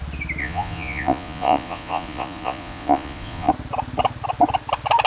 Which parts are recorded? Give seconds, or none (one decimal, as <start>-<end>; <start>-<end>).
0.0-0.4; 3.5-5.1